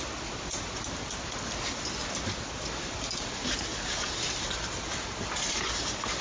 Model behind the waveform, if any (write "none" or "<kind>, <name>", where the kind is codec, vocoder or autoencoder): none